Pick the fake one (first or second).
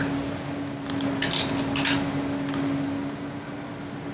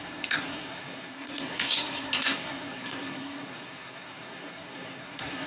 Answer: second